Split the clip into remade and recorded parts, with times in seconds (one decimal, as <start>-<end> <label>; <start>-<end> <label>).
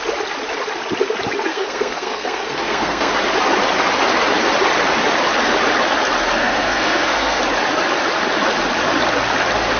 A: 0.0-1.5 recorded; 1.5-3.1 remade; 3.1-6.4 recorded; 6.4-7.4 remade; 7.4-9.8 recorded